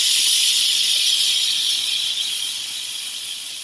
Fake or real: fake